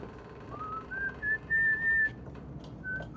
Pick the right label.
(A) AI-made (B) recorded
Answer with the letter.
B